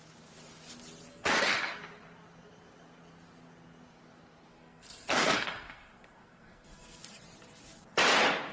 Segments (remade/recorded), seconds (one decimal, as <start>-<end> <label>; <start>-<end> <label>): 0.0-1.1 recorded; 1.1-1.8 remade; 1.8-4.5 recorded; 4.5-7.0 remade; 7.0-8.5 recorded